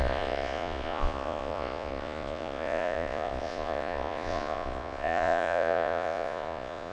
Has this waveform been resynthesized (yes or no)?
yes